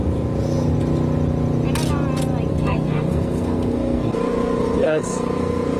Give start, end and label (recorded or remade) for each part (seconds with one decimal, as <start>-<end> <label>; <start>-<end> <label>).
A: 0.0-2.5 recorded; 2.5-5.8 remade